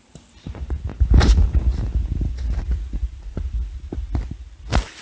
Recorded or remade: recorded